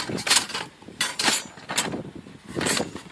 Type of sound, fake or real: real